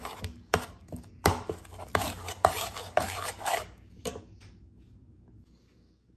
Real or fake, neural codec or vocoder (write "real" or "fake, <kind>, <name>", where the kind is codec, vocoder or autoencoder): fake, codec, DAC